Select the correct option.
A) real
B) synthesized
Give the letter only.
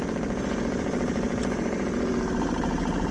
B